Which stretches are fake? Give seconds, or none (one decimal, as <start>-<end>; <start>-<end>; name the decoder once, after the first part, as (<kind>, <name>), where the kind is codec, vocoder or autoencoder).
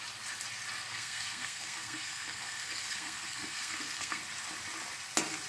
0.9-4.2 (codec, SNAC)